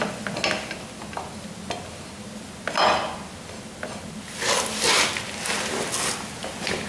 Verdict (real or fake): real